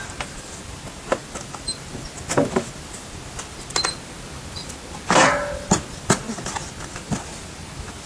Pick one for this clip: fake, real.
real